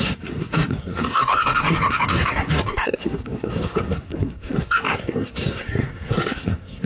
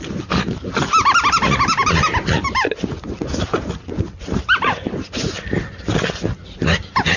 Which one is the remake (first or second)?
first